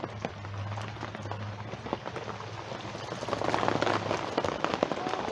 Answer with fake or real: real